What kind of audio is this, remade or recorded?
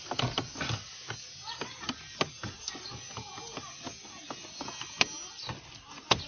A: recorded